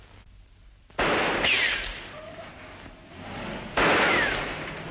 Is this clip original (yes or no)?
yes